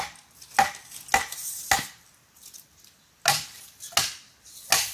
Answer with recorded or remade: recorded